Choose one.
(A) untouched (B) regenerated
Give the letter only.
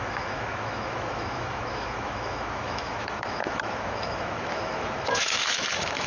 B